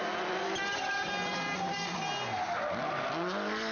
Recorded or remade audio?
recorded